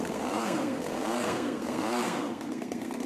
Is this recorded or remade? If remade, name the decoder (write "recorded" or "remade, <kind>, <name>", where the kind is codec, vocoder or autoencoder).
remade, codec, SNAC